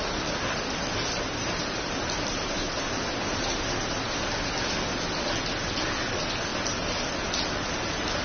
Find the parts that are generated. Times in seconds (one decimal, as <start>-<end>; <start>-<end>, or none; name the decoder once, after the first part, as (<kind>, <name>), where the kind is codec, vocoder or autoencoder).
none

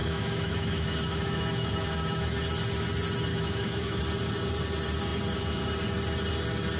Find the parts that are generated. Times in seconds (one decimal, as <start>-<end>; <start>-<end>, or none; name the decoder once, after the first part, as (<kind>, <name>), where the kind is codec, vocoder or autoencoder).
0.0-2.4 (autoencoder, DAC-VAE); 3.3-4.0